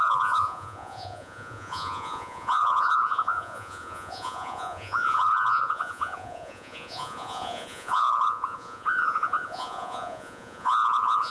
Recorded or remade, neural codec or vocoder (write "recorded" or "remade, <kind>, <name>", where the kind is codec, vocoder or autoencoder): remade, vocoder, Vocos